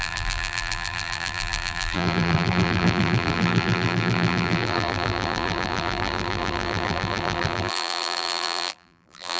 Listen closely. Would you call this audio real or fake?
fake